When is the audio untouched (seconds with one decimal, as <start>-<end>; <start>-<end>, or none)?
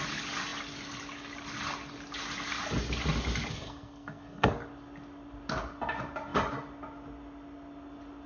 0.0-3.5; 4.5-8.3